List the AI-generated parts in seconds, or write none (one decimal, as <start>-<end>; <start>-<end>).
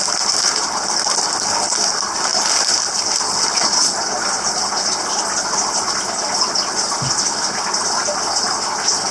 none